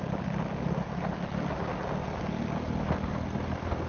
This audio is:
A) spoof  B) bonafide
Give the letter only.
B